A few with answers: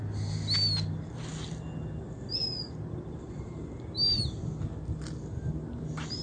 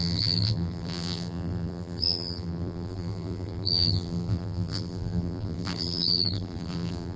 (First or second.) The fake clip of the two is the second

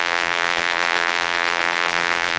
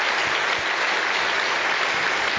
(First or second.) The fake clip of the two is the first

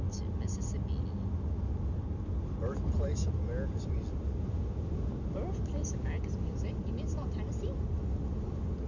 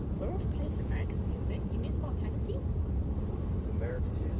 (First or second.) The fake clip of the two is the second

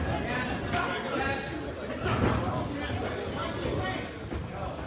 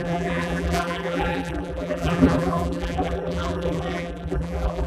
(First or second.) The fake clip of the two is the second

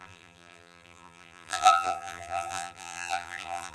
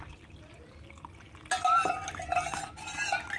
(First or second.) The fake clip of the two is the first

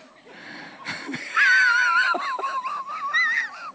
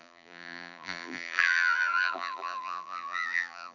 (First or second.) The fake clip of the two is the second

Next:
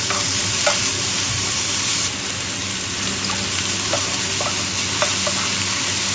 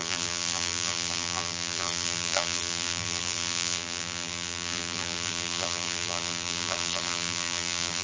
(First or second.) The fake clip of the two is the second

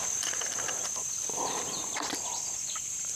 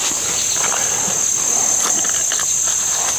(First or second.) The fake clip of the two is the first